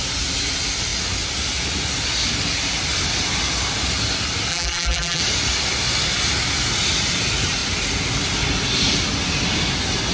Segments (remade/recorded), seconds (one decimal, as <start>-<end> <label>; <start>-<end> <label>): 0.0-4.5 recorded; 4.5-5.2 remade; 5.2-10.1 recorded